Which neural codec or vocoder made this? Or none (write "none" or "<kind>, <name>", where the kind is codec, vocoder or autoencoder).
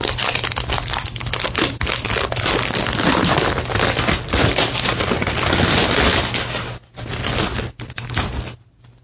none